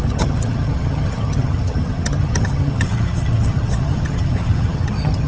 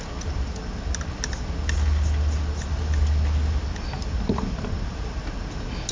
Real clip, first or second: second